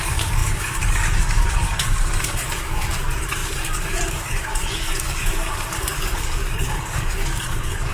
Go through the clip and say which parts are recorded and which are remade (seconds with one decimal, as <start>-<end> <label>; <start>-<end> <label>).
0.0-7.9 remade